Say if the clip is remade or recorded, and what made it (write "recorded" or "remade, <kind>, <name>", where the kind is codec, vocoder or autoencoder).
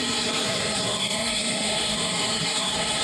remade, codec, SNAC